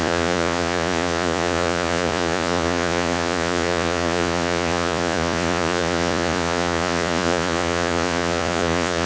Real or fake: fake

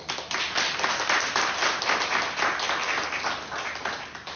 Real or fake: real